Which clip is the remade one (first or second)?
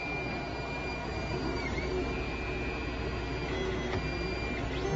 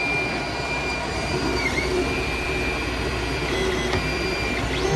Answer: second